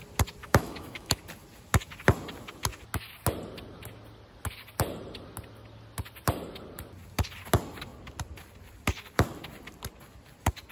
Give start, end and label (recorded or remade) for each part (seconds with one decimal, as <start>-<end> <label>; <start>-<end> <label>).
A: 0.0-0.4 recorded; 0.4-1.2 remade; 1.2-10.7 recorded

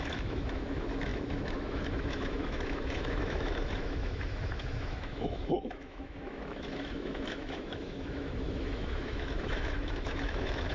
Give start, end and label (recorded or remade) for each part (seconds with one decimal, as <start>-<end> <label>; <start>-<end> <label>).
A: 0.0-10.7 remade